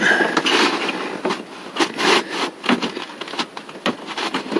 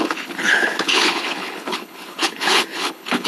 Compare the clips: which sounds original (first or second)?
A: first